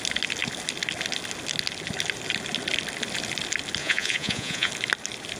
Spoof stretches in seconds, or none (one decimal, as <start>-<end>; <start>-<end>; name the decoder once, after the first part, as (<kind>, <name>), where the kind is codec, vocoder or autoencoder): 3.8-4.7 (vocoder, Vocos)